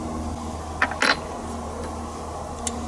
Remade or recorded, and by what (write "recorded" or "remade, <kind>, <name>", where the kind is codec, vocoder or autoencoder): recorded